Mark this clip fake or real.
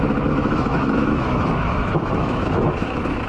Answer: fake